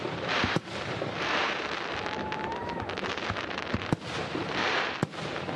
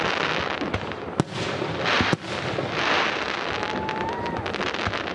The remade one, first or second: first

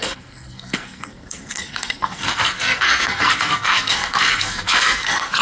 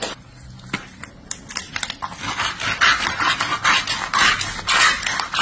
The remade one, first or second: first